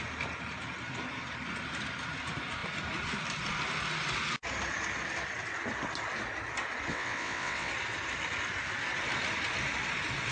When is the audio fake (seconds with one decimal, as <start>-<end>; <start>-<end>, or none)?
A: 6.9-7.7